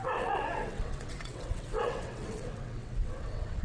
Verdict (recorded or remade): remade